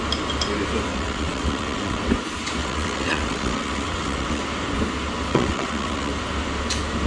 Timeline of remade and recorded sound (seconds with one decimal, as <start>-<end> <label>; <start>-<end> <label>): 0.0-0.9 recorded; 0.9-2.0 remade; 2.0-2.6 recorded; 2.6-4.4 remade; 4.4-5.3 recorded; 5.3-6.1 remade; 6.1-7.1 recorded